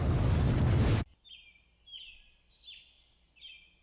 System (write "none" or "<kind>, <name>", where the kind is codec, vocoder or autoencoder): none